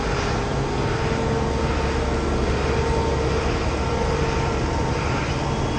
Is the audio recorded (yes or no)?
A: yes